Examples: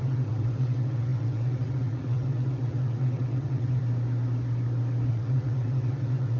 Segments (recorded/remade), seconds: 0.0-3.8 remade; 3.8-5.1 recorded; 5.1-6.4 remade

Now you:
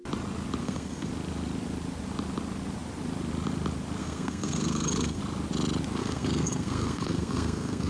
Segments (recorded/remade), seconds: 0.0-0.6 recorded; 0.6-1.1 remade; 1.1-4.0 recorded; 4.0-5.2 remade; 5.2-6.0 recorded; 6.0-7.9 remade

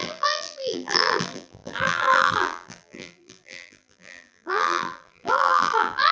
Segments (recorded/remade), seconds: 0.0-6.1 remade

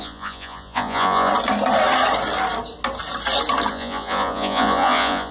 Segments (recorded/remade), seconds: 0.0-1.3 remade; 1.3-3.7 recorded; 3.7-5.3 remade